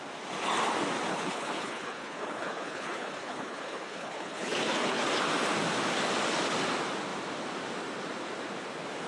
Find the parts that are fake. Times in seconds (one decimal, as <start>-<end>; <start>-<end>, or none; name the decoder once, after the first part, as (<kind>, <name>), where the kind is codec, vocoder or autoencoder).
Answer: 1.1-5.0 (codec, HILCodec)